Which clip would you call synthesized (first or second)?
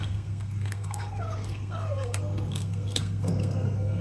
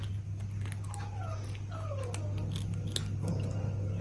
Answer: first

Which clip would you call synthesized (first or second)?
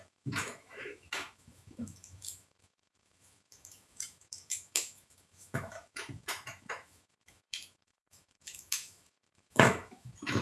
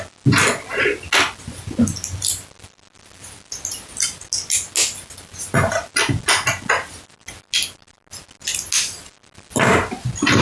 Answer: first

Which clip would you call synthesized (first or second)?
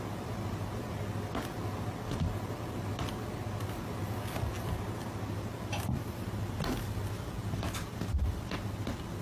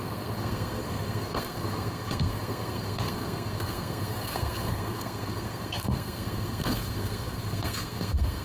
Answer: second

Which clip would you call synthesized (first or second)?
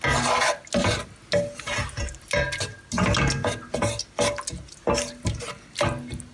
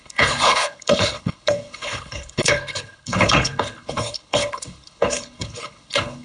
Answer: second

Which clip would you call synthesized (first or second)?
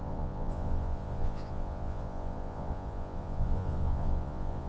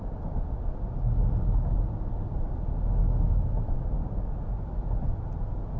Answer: first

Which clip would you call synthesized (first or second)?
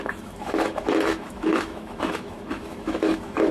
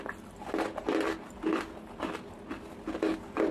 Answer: first